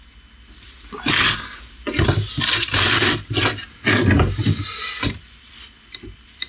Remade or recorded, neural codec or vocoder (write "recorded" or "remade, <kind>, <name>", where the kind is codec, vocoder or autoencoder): recorded